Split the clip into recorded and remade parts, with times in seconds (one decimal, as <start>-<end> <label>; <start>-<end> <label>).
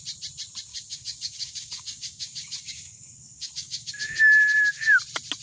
0.0-0.7 recorded; 0.7-3.9 remade; 3.9-5.4 recorded